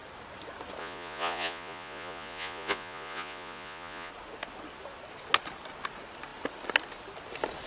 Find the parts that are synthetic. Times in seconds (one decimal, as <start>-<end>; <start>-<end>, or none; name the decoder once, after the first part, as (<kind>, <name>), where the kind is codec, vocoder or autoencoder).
0.8-4.1 (vocoder, Vocos)